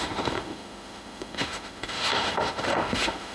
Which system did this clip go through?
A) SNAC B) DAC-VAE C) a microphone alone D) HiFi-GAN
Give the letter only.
B